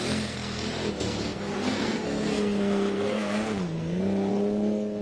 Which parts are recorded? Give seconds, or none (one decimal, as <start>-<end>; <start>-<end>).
none